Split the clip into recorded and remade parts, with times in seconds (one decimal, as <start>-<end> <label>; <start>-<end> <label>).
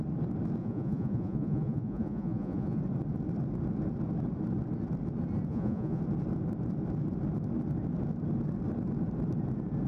0.0-0.6 recorded; 0.6-2.8 remade; 2.8-5.5 recorded; 5.5-6.0 remade; 6.0-9.9 recorded